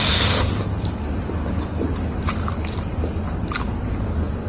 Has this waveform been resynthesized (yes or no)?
no